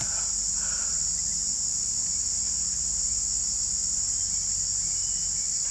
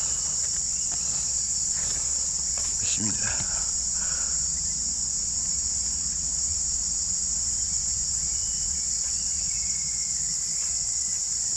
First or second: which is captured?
first